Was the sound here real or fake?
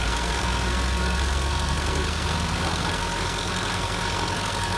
fake